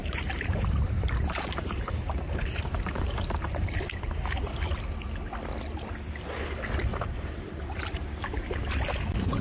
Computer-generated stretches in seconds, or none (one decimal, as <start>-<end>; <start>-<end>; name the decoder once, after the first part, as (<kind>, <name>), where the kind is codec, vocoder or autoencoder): 0.0-4.7 (vocoder, BigVGAN v2); 6.9-7.8

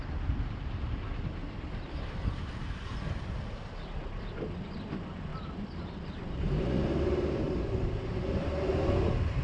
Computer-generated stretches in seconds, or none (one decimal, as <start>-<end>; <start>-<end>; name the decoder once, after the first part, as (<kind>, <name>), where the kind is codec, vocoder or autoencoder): 1.4-3.0 (vocoder, BigVGAN v2); 5.3-6.2

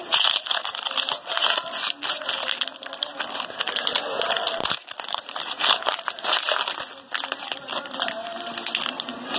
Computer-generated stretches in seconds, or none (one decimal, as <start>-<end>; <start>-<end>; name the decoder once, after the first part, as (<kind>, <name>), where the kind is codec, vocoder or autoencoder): 0.0-0.9 (vocoder, BigVGAN v2); 4.6-6.2

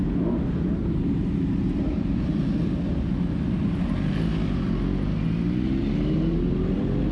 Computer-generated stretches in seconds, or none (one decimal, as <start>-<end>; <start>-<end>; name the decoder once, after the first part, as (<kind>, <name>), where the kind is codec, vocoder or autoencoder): 0.8-2.4 (vocoder, BigVGAN v2)

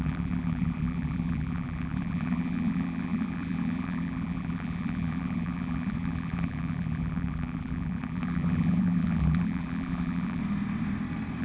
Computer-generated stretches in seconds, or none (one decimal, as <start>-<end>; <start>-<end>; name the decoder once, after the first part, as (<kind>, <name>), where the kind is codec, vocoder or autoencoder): 0.0-10.4 (vocoder, BigVGAN v2)

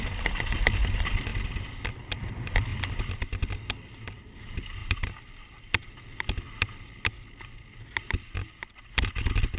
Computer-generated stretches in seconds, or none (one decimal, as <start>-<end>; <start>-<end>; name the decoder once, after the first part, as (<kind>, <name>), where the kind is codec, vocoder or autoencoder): none